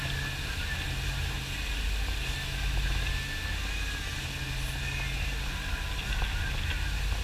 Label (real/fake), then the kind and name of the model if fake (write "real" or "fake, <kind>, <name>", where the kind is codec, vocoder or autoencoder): real